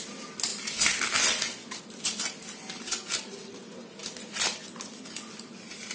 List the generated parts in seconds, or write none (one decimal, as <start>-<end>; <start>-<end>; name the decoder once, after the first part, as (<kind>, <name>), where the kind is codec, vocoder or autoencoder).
none